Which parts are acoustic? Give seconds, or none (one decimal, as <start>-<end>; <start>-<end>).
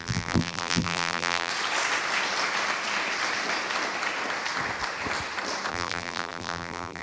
1.5-5.7